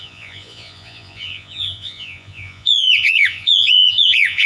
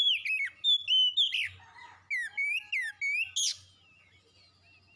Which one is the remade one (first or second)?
first